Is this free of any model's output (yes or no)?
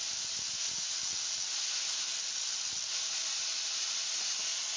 yes